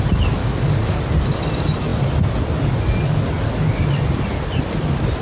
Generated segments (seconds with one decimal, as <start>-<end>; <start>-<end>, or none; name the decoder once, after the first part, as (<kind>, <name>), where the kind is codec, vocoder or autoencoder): 0.4-1.0 (codec, DAC)